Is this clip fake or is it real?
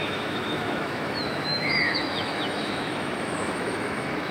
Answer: fake